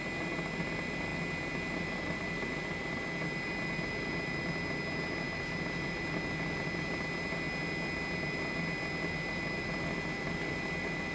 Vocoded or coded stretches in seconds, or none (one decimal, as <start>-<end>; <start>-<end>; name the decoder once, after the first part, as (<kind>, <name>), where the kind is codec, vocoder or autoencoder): none